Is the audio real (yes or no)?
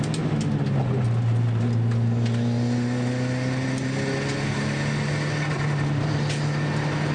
yes